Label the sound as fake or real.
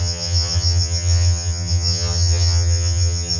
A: fake